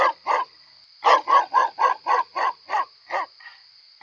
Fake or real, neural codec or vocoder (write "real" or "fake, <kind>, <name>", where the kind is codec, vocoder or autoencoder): fake, vocoder, BigVGAN v2